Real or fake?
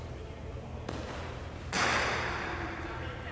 fake